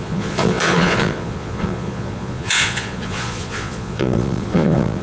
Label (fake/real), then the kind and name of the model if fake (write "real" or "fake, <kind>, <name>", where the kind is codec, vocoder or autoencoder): fake, vocoder, Vocos